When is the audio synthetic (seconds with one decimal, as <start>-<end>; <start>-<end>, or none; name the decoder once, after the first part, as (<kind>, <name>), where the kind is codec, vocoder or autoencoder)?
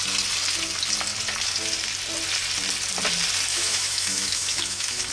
3.5-5.1 (autoencoder, DAC-VAE)